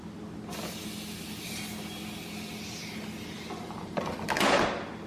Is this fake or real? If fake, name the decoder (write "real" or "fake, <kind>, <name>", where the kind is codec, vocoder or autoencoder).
real